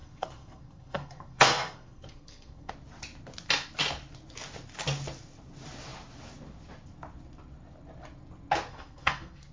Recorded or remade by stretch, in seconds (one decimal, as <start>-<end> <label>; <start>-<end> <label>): 0.0-2.7 remade; 2.7-8.7 recorded; 8.7-9.5 remade